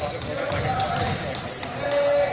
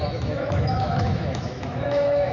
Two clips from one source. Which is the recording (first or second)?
first